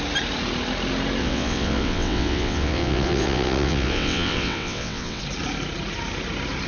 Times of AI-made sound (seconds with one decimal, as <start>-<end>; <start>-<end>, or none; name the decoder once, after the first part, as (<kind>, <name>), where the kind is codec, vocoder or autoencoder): 1.2-5.2 (vocoder, WaveNeXt)